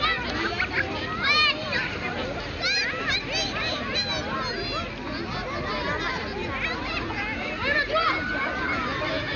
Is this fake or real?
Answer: real